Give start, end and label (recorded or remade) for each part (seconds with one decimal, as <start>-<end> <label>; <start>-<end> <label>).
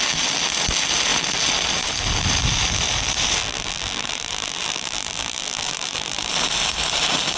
0.0-3.4 recorded; 3.4-6.3 remade; 6.3-7.4 recorded